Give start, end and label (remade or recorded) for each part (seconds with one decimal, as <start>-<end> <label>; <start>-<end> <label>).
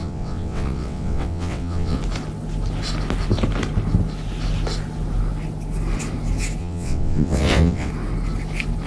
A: 0.0-2.0 remade; 2.0-6.6 recorded; 6.6-7.9 remade; 7.9-8.9 recorded